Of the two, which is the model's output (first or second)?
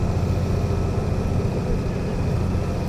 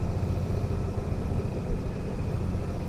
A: second